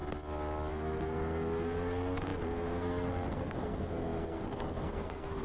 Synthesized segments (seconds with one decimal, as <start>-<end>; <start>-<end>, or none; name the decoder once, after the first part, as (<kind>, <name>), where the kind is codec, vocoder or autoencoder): 0.7-5.4 (codec, SNAC)

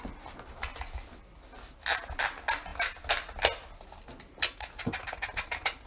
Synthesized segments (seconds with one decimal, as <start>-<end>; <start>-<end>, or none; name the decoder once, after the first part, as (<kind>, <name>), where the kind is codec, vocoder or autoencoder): none

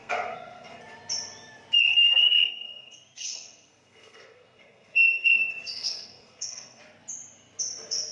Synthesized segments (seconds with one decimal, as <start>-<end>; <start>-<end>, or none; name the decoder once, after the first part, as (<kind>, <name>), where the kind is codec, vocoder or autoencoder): 0.0-0.8 (codec, SNAC); 1.9-6.8

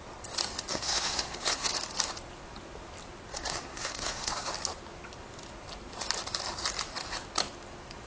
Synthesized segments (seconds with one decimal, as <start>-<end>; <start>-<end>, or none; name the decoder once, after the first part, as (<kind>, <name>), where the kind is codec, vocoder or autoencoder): 0.7-1.7 (codec, SNAC); 3.3-4.5

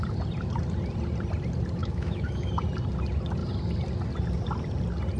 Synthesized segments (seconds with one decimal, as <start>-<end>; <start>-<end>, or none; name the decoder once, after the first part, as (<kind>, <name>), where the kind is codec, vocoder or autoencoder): 1.8-2.5 (autoencoder, DAC-VAE)

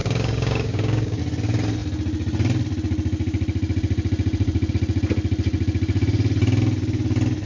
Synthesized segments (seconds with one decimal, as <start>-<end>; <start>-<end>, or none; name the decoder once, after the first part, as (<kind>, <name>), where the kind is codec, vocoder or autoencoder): 0.0-1.2 (codec, DAC)

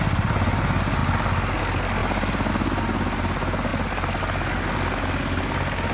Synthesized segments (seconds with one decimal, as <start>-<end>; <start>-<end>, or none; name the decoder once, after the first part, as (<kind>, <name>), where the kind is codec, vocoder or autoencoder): 2.0-2.5 (vocoder, BigVGAN v2)